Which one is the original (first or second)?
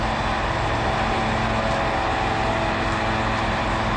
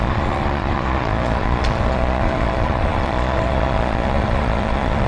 first